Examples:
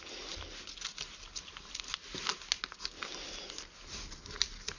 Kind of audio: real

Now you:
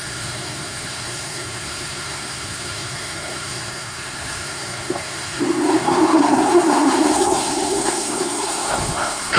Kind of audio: fake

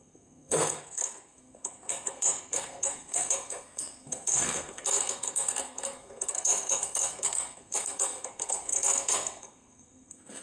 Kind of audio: fake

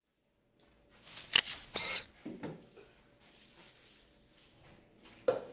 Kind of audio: real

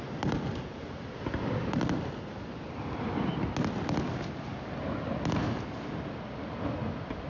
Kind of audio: real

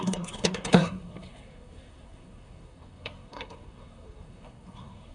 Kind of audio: fake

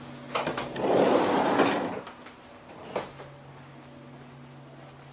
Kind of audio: real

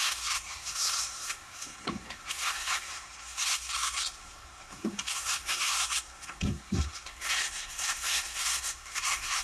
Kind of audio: fake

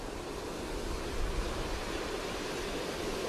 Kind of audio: real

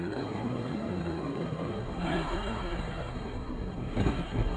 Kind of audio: fake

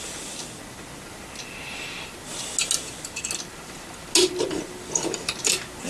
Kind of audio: real